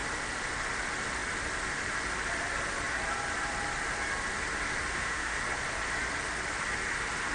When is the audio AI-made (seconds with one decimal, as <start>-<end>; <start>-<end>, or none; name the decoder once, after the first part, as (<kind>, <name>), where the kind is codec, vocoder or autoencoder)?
4.9-5.4 (autoencoder, DAC-VAE)